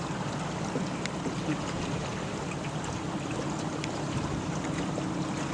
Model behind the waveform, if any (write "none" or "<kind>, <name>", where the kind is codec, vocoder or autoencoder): none